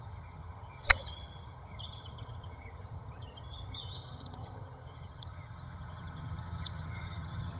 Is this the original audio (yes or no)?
no